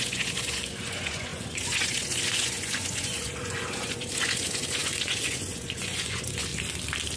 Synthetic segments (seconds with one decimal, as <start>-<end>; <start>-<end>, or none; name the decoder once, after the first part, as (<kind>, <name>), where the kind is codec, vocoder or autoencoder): 0.0-6.5 (vocoder, Vocos)